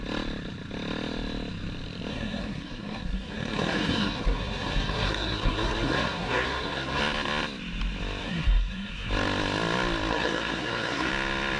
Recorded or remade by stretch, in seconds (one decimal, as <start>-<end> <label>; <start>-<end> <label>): 0.0-2.1 recorded; 2.1-7.0 remade; 7.0-8.2 recorded; 8.2-9.1 remade; 9.1-10.1 recorded; 10.1-11.1 remade; 11.1-11.6 recorded